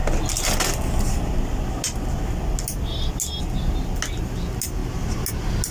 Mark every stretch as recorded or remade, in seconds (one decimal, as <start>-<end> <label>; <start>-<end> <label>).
0.0-5.7 recorded